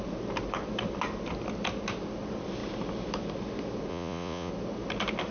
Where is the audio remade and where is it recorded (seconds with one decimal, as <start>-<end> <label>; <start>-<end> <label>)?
0.0-3.9 recorded; 3.9-4.5 remade; 4.5-5.3 recorded